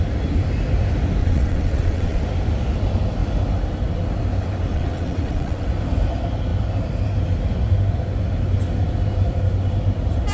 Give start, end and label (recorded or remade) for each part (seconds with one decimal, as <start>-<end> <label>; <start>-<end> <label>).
0.0-1.2 recorded; 1.2-2.2 remade; 2.2-4.7 recorded; 4.7-5.7 remade; 5.7-10.3 recorded